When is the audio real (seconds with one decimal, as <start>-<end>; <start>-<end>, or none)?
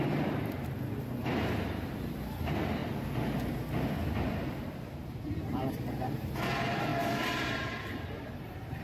2.8-4.3